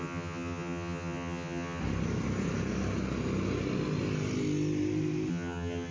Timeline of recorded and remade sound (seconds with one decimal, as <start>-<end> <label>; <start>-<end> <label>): 0.0-1.8 remade; 1.8-5.3 recorded; 5.3-5.9 remade